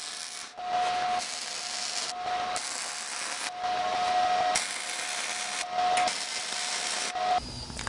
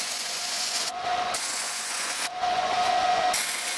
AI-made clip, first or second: second